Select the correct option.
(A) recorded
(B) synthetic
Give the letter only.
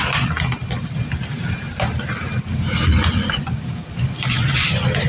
A